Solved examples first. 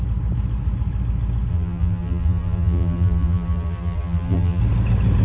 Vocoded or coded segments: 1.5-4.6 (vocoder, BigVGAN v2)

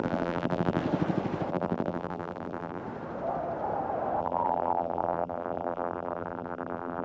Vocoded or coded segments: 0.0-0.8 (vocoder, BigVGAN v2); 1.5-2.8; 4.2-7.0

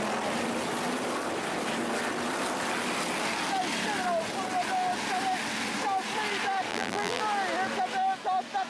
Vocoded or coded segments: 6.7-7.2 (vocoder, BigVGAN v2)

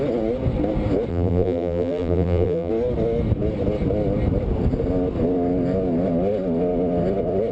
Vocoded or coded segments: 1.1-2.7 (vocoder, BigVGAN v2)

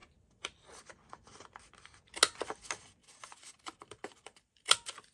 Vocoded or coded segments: 0.0-0.8 (vocoder, BigVGAN v2); 3.0-5.1

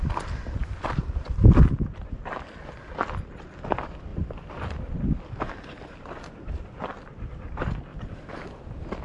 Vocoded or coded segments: 0.6-2.1 (vocoder, BigVGAN v2); 4.1-4.9; 7.9-8.6

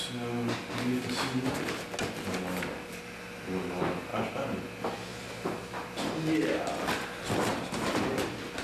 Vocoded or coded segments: 4.1-4.6 (vocoder, BigVGAN v2); 5.1-6.1; 7.5-8.1

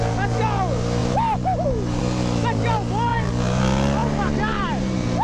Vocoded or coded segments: 1.0-2.0 (vocoder, BigVGAN v2); 3.1-3.6; 4.0-4.8